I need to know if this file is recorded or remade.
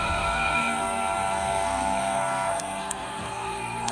remade